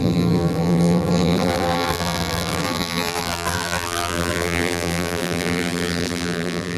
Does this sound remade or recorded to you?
remade